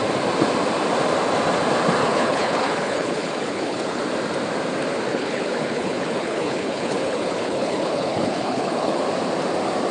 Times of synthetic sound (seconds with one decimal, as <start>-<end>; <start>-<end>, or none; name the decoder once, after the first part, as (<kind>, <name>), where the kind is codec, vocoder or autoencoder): 2.0-4.0 (codec, HILCodec); 5.1-9.0